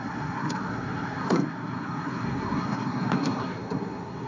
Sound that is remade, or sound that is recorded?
remade